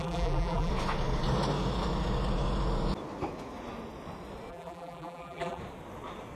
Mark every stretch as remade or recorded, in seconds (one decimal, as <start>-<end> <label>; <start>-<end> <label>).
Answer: 0.0-0.7 remade; 0.7-4.5 recorded; 4.5-5.6 remade; 5.6-6.4 recorded